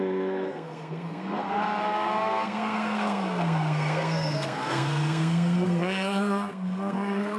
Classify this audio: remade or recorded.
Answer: remade